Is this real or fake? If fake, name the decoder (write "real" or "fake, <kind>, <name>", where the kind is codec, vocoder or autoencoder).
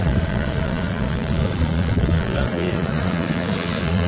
fake, vocoder, Vocos